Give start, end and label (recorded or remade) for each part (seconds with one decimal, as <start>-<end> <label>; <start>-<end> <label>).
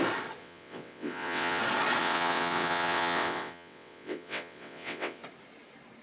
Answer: 0.0-0.4 recorded; 0.4-1.6 remade; 1.6-2.0 recorded; 2.0-5.2 remade; 5.2-6.0 recorded